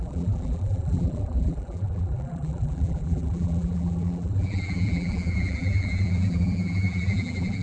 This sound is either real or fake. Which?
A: fake